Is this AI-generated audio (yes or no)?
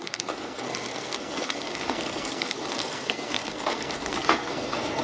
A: yes